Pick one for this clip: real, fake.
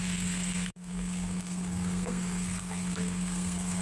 fake